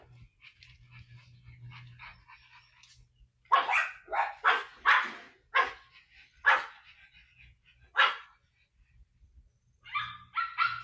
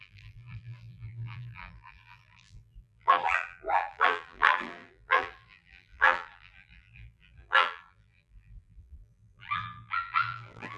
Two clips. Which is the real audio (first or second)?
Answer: first